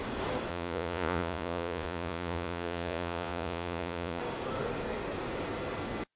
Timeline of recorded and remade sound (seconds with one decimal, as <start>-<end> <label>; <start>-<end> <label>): 0.0-0.5 recorded; 0.5-4.2 remade; 4.2-6.2 recorded